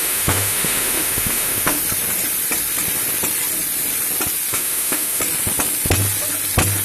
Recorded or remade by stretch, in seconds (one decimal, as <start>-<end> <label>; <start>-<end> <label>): 0.0-1.8 remade; 1.8-4.5 recorded; 4.5-5.2 remade; 5.2-6.8 recorded